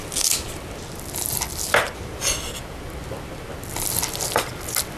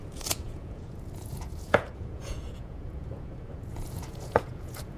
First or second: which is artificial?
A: second